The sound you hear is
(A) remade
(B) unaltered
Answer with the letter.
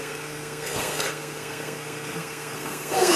A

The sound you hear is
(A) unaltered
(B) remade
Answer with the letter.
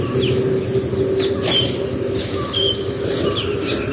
A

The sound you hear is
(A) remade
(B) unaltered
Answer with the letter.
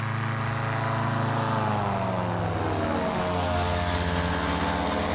B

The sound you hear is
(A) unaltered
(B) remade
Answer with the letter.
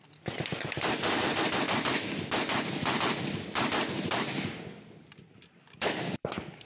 A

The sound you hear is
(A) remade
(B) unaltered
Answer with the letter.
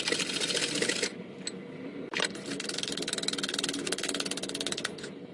B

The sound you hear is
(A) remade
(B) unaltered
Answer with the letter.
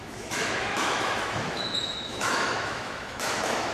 A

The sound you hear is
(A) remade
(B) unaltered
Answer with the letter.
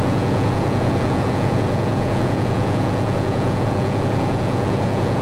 A